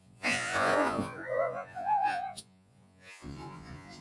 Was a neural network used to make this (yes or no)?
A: yes